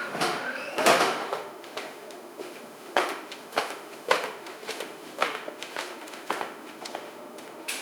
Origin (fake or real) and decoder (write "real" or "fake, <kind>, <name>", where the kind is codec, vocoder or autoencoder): fake, autoencoder, DAC-VAE